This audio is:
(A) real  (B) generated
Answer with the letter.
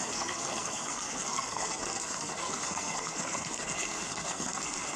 B